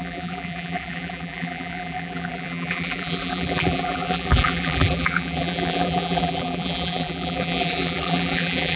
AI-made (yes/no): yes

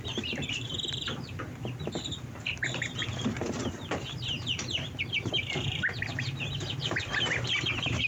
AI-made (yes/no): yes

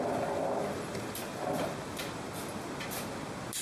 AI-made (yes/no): no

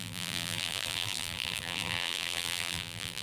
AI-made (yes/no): yes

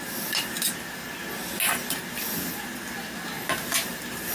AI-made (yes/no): no